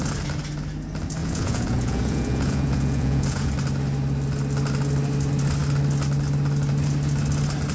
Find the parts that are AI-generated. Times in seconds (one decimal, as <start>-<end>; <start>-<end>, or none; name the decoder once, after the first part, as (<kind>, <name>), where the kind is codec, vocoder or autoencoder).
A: 1.2-3.5 (vocoder, Vocos)

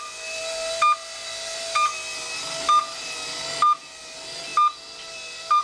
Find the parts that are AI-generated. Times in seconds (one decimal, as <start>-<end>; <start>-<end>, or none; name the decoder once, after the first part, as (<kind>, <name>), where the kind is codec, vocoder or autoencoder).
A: none